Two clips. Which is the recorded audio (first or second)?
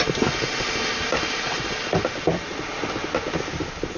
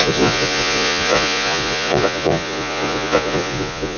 first